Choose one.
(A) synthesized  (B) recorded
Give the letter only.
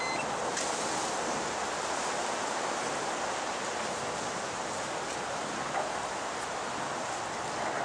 B